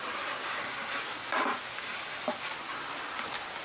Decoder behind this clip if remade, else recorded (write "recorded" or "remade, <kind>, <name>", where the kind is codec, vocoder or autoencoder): recorded